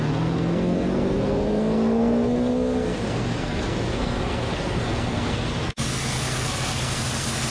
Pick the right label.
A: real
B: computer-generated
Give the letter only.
B